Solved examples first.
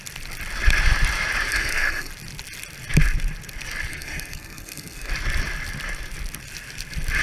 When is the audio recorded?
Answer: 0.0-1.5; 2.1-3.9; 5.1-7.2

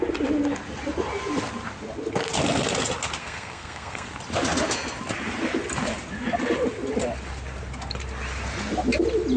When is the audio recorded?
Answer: 0.0-3.2; 4.1-9.4

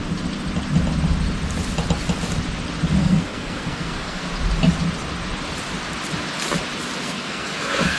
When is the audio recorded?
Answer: 0.0-3.0; 4.3-7.0

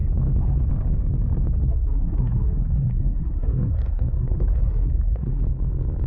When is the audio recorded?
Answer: 0.0-1.7; 5.4-6.1